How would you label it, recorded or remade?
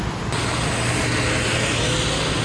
recorded